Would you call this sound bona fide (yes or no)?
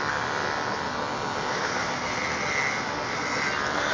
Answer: yes